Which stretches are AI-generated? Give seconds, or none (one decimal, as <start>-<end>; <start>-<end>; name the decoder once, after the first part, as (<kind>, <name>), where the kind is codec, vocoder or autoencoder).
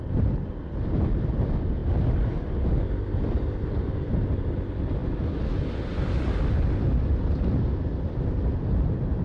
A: none